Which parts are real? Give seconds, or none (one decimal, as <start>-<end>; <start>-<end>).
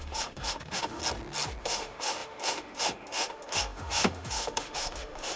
1.0-1.6